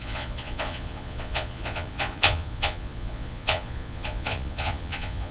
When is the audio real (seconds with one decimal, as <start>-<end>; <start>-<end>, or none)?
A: none